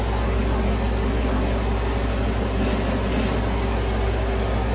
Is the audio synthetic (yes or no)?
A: no